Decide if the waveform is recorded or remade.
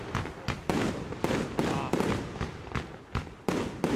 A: recorded